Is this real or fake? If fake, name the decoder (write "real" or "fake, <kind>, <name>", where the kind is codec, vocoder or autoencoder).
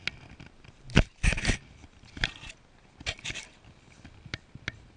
real